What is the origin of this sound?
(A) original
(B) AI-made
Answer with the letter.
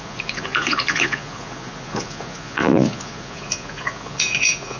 B